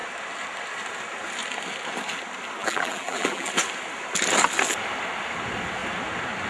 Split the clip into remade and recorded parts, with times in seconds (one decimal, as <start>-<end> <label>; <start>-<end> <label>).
0.0-2.6 recorded; 2.6-3.5 remade; 3.5-6.5 recorded